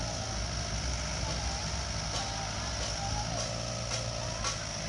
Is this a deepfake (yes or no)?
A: no